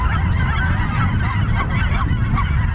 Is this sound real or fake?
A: real